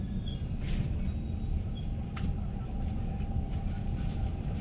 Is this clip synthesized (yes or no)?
no